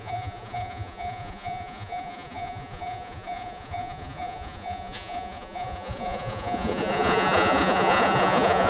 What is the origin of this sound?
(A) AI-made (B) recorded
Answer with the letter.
A